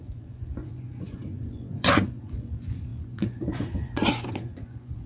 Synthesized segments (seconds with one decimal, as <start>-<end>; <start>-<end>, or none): 0.0-5.1